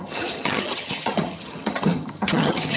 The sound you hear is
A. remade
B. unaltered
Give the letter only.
A